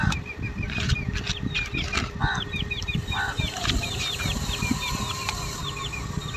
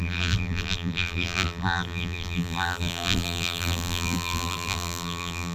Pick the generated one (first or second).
second